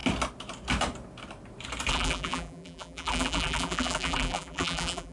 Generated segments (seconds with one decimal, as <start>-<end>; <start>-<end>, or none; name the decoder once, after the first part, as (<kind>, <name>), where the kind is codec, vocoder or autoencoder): 1.9-5.1 (vocoder, BigVGAN v2)